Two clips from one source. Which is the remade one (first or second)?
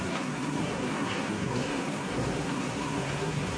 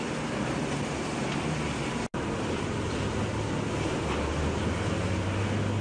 first